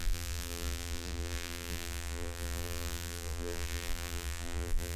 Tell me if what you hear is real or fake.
fake